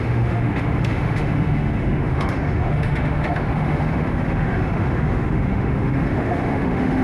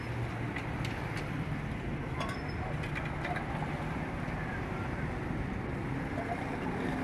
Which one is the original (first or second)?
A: second